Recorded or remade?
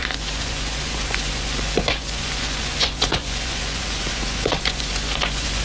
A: remade